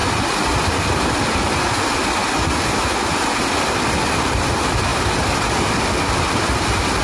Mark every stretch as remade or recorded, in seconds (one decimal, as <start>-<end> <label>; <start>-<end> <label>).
0.0-7.0 recorded